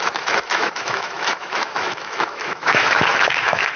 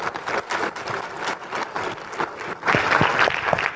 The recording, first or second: second